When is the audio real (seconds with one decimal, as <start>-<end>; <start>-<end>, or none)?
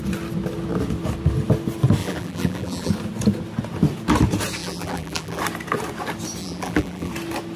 0.0-2.0; 2.9-4.6; 5.4-6.4; 7.1-7.6